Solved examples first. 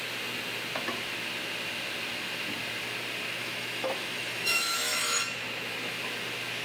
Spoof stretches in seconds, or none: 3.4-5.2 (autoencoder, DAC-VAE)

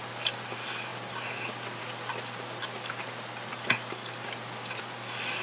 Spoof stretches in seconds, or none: none

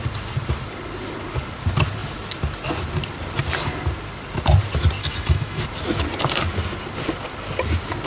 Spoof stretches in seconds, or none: 5.0-5.6 (autoencoder, DAC-VAE)

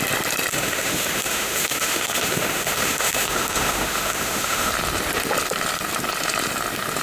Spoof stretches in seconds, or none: 0.5-4.7 (autoencoder, DAC-VAE)

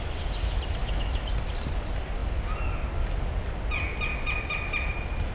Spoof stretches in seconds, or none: 0.8-1.3 (autoencoder, DAC-VAE)

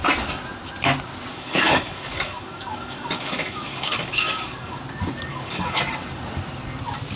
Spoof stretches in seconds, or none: 1.3-4.8 (codec, DAC); 5.3-5.8